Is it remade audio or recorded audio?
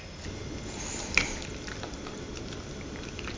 recorded